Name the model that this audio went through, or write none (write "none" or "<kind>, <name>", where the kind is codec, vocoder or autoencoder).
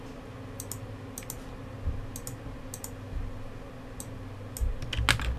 none